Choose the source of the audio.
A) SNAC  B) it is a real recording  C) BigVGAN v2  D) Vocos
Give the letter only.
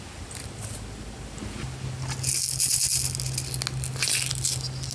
B